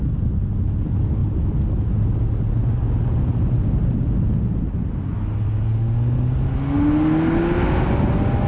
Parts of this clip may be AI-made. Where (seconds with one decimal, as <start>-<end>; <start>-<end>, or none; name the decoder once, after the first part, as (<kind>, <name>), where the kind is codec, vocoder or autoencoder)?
none